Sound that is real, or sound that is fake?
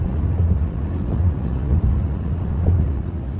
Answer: fake